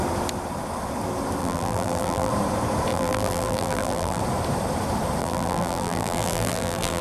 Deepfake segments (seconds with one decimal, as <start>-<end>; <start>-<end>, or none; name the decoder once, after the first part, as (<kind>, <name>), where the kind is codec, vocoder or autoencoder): 1.4-2.3 (vocoder, BigVGAN v2); 2.9-4.2; 5.2-7.0